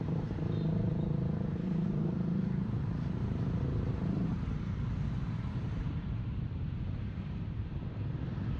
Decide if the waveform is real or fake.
fake